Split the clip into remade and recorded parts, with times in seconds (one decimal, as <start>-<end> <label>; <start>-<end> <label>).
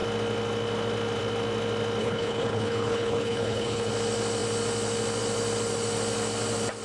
0.0-2.0 recorded; 2.0-3.9 remade; 3.9-6.8 recorded